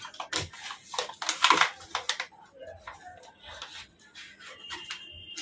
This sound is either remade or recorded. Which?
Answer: recorded